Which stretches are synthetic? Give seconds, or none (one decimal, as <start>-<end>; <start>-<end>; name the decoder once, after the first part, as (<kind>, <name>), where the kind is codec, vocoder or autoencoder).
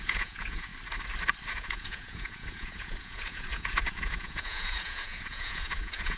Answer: 0.0-0.7 (vocoder, Vocos); 1.5-6.2